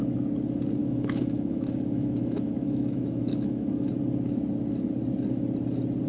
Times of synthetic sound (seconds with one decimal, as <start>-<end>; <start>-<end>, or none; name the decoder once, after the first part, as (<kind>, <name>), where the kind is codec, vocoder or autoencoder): 0.8-3.9 (autoencoder, DAC-VAE)